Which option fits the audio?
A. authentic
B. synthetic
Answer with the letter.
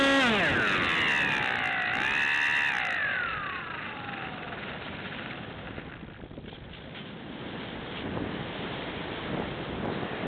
A